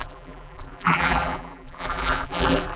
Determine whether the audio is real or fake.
fake